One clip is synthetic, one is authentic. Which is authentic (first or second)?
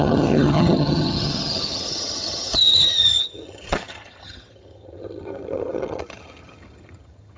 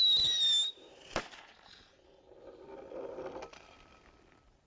second